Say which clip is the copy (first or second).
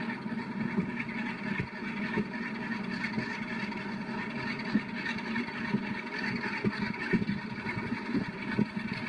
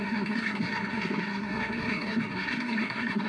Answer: second